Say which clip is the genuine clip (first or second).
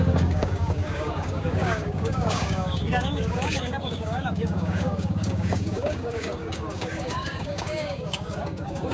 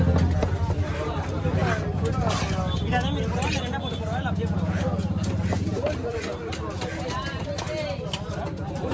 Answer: second